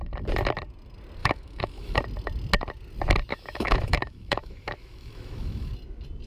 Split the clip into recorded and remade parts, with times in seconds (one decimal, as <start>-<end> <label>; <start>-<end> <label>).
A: 0.0-1.2 recorded; 1.2-2.0 remade; 2.0-3.3 recorded; 3.3-5.7 remade; 5.7-6.3 recorded